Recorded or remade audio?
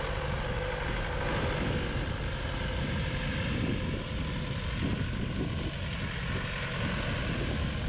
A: recorded